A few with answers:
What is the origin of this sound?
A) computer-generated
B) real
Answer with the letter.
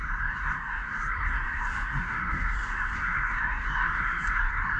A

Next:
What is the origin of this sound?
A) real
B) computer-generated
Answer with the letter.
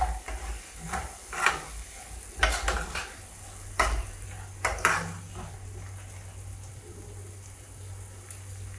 A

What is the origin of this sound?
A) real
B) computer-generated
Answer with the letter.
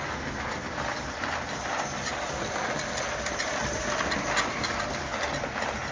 A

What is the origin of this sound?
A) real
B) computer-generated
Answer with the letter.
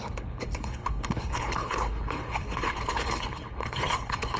B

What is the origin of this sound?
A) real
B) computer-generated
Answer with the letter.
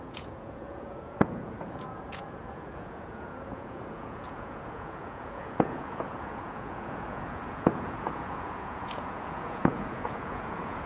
B